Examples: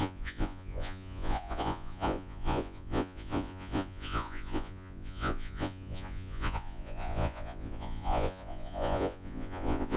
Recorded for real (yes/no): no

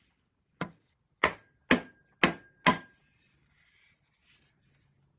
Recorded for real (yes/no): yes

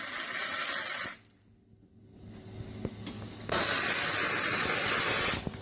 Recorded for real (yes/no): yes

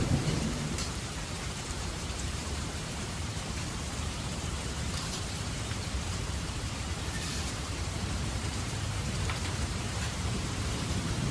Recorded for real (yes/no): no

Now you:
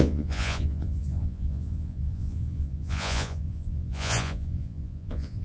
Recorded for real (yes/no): no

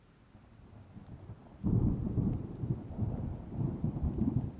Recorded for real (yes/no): yes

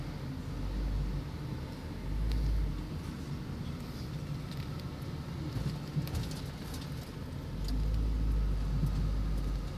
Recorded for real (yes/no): yes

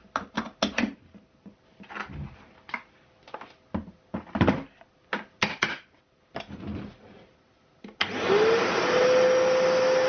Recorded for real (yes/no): yes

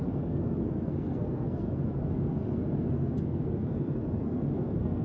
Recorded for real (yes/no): no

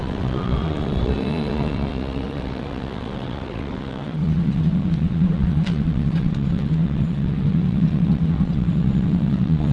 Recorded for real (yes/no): no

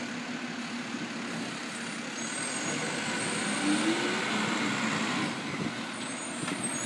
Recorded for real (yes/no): yes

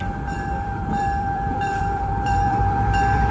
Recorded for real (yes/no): no